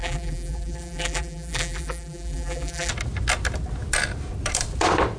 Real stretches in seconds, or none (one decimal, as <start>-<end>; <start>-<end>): 2.9-5.2